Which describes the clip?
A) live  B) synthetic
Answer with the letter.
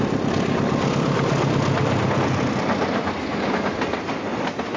A